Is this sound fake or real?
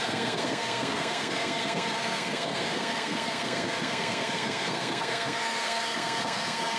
fake